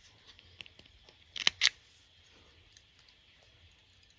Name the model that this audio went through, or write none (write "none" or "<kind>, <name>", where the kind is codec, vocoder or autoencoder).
none